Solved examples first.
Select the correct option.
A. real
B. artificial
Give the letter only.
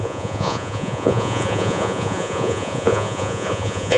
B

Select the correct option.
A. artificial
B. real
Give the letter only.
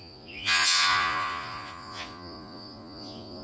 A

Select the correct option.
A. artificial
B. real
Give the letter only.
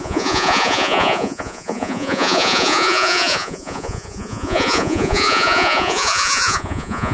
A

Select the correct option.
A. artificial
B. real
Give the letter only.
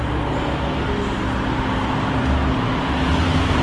B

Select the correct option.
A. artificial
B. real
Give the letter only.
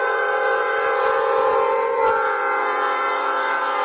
A